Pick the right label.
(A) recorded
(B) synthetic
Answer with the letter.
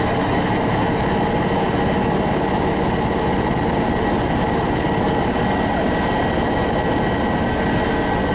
A